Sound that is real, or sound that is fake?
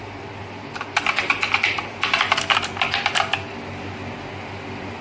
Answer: real